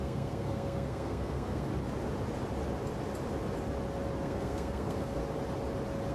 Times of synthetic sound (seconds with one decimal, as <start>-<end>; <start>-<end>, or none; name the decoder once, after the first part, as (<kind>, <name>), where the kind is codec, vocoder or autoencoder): 0.0-1.7 (codec, SNAC); 4.2-5.2